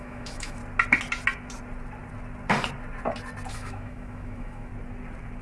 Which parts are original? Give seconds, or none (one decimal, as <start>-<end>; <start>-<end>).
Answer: 0.6-3.5; 4.7-5.4